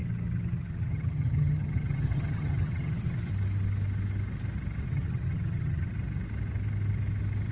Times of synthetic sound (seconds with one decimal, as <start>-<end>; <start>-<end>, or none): 0.0-3.3; 4.9-5.9